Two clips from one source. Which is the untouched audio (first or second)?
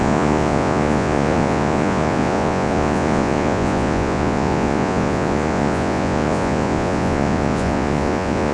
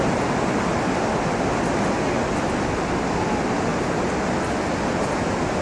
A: second